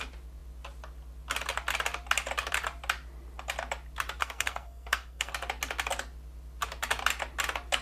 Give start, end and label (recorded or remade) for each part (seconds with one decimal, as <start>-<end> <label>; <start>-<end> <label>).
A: 0.0-4.2 recorded; 4.2-5.3 remade; 5.3-7.8 recorded